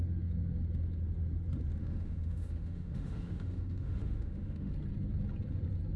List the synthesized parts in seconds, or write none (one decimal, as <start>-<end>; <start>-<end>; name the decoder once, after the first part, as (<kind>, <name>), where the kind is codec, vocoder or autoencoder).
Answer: 1.8-4.7 (autoencoder, DAC-VAE)